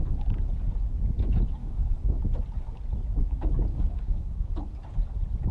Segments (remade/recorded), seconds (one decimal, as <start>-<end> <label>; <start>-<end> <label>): 0.0-1.6 recorded; 1.6-2.2 remade; 2.2-3.7 recorded; 3.7-4.5 remade; 4.5-5.5 recorded